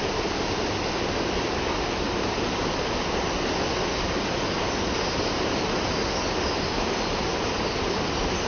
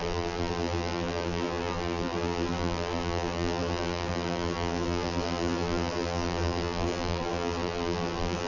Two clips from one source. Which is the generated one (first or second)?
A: second